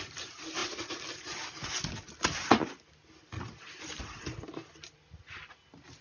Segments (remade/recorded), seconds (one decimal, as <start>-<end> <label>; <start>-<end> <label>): 0.0-6.0 recorded